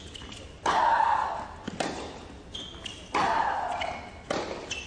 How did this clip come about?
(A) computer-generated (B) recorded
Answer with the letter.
B